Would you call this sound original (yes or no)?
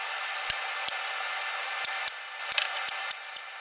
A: yes